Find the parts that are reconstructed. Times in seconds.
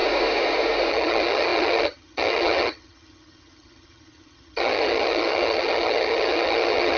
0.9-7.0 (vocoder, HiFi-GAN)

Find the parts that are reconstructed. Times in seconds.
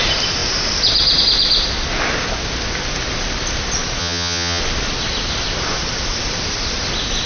4.0-4.6 (vocoder, HiFi-GAN)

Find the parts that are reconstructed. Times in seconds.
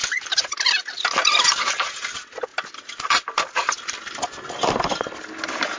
none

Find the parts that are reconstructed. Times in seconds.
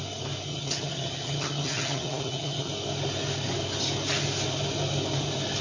0.5-2.7 (vocoder, HiFi-GAN)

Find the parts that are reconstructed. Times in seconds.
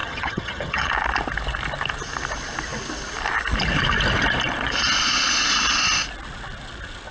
0.0-0.9 (vocoder, HiFi-GAN)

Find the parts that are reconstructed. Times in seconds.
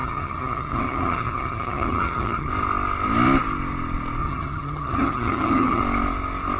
0.0-2.5 (vocoder, HiFi-GAN); 4.2-5.8